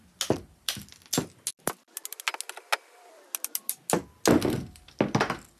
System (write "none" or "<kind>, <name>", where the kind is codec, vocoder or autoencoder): none